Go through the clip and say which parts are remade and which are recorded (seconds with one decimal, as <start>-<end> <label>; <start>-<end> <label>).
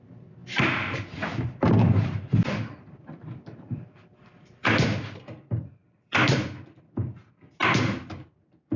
0.0-0.4 recorded; 0.4-5.2 remade; 5.2-5.8 recorded; 5.8-6.4 remade; 6.4-8.8 recorded